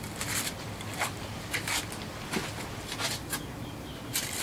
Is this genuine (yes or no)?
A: yes